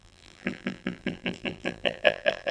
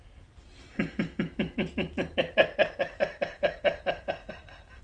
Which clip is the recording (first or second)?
second